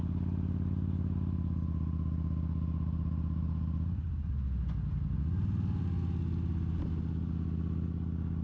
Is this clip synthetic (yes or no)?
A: no